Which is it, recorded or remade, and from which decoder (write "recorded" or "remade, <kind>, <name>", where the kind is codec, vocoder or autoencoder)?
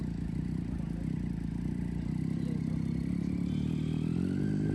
recorded